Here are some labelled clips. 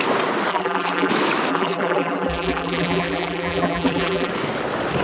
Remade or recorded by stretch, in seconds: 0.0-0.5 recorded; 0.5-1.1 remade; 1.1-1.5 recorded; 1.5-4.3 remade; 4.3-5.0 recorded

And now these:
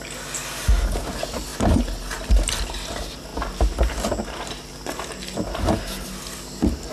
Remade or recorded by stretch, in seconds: 0.0-6.9 recorded

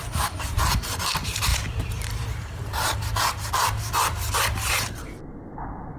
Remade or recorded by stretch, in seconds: 0.0-5.3 remade; 5.3-6.0 recorded

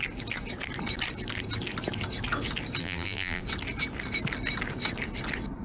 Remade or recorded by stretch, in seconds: 0.0-2.8 recorded; 2.8-3.4 remade; 3.4-5.6 recorded

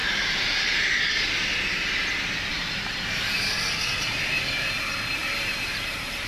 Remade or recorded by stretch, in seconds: 0.0-0.6 remade; 0.6-2.5 recorded; 2.5-3.6 remade; 3.6-5.2 recorded; 5.2-6.3 remade

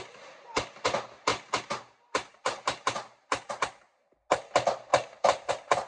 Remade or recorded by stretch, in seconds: 0.0-1.3 recorded; 1.3-3.6 remade; 3.6-4.9 recorded; 4.9-5.5 remade; 5.5-5.9 recorded